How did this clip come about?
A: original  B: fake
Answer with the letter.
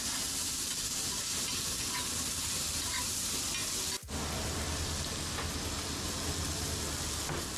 A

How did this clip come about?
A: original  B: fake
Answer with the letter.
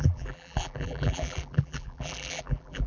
B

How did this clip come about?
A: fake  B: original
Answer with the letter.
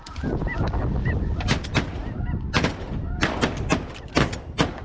B